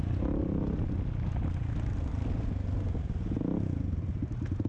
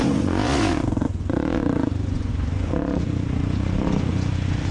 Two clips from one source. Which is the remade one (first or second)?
second